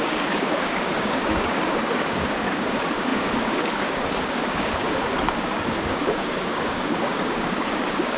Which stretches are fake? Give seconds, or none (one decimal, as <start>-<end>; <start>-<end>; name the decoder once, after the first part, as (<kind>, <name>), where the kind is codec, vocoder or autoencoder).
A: 0.0-8.2 (codec, DAC)